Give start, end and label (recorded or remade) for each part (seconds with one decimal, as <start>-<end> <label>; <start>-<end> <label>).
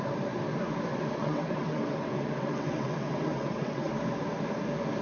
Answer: 0.0-0.9 recorded; 0.9-3.9 remade; 3.9-5.0 recorded